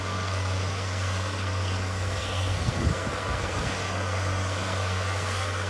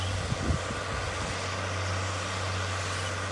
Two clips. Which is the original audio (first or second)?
second